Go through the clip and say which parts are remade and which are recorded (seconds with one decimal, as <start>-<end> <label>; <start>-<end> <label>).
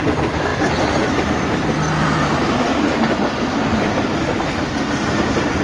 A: 0.0-5.6 remade